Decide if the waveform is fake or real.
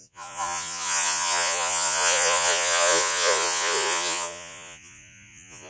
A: fake